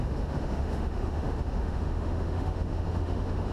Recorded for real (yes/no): no